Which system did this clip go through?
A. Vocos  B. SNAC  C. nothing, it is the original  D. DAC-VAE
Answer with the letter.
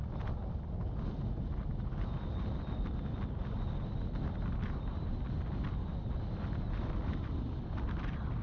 C